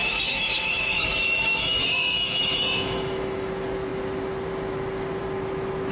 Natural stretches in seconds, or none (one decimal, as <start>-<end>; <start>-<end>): 3.5-5.9